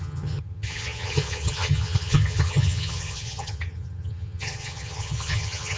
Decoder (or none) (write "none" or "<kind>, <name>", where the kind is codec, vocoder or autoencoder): vocoder, HiFi-GAN